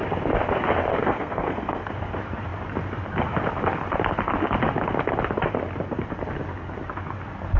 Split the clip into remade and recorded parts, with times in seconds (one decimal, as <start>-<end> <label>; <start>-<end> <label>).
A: 0.0-0.9 recorded; 0.9-1.9 remade; 1.9-7.6 recorded